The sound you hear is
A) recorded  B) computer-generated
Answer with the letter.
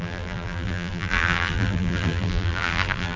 B